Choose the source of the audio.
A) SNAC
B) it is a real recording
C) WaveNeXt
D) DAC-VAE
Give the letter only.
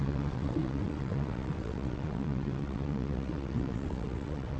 C